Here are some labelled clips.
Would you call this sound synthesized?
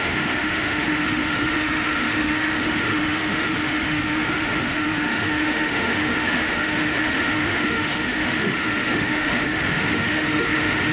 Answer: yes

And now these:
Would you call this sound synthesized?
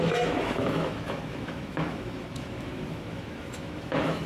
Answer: yes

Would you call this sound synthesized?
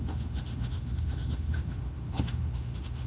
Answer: yes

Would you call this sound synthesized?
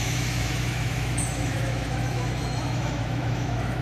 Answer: yes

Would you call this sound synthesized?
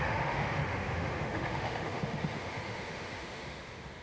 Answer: yes